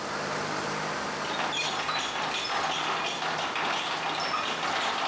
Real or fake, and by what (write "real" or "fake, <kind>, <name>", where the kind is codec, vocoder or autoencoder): real